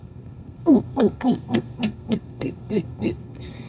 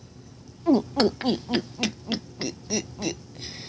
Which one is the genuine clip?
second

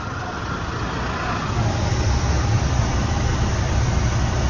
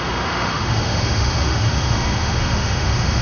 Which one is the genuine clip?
first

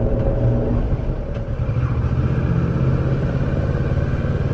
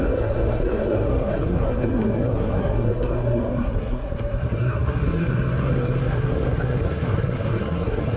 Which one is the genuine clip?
first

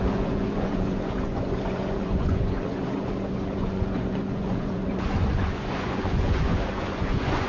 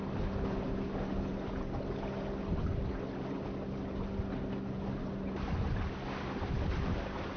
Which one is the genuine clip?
second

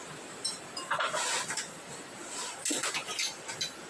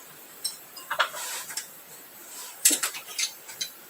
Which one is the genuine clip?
first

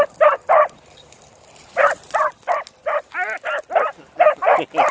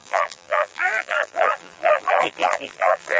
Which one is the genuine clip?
first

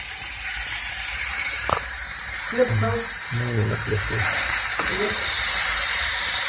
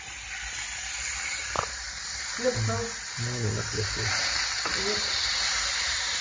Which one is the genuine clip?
second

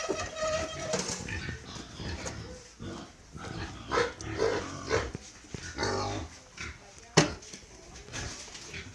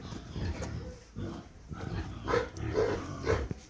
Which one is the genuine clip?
first